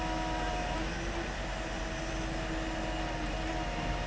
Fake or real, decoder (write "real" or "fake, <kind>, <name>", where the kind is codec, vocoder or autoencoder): real